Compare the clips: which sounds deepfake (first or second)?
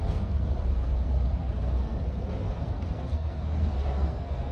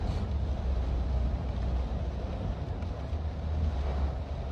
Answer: first